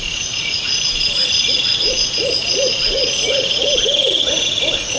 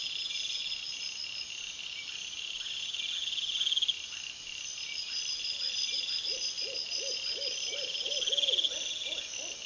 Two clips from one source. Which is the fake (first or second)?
first